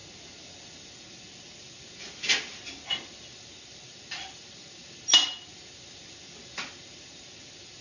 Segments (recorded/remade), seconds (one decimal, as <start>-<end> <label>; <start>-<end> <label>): 0.0-7.8 recorded